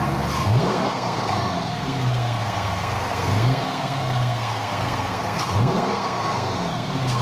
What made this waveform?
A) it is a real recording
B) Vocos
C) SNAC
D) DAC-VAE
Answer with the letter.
C